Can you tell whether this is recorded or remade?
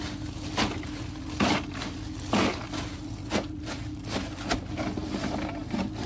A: recorded